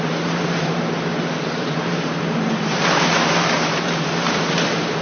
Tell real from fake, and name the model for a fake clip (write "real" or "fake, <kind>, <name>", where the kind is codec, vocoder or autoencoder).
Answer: fake, vocoder, BigVGAN v2